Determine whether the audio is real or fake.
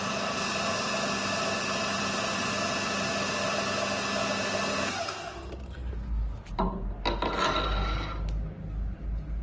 real